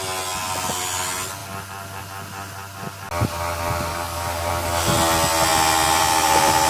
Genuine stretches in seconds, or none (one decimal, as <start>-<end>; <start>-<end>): 0.0-3.9; 4.5-6.7